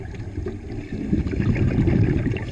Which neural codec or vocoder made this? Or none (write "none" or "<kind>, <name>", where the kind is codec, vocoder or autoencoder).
none